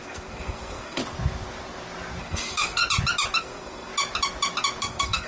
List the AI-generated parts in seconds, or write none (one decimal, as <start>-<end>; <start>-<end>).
0.0-1.0; 2.2-2.8; 3.4-3.9; 4.8-5.3